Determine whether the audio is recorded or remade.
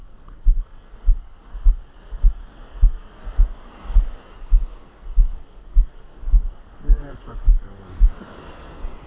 remade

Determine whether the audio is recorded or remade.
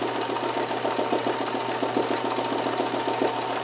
recorded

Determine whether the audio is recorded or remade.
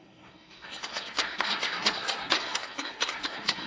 remade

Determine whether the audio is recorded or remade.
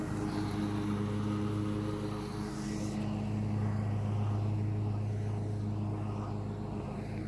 recorded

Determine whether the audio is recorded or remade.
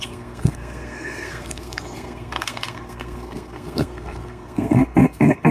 remade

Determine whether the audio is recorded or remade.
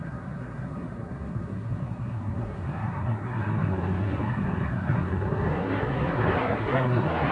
remade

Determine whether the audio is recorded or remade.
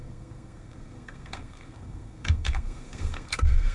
remade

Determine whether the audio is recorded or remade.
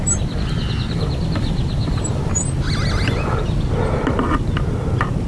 recorded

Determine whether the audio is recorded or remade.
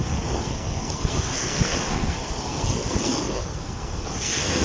remade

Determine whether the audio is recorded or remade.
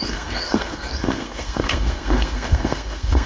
remade